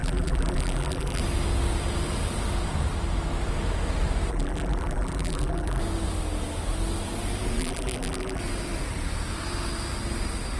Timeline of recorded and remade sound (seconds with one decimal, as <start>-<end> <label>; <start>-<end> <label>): 0.0-1.2 remade; 1.2-4.3 recorded; 4.3-5.8 remade; 5.8-7.6 recorded; 7.6-8.4 remade; 8.4-10.6 recorded